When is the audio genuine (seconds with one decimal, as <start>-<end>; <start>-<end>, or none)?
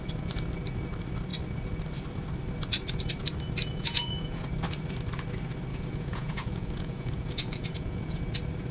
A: 0.0-3.7; 4.4-5.7; 8.2-8.7